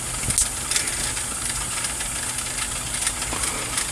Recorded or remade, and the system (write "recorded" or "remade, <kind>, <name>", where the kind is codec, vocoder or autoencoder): recorded